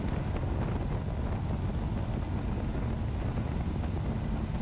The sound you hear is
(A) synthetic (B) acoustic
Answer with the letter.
B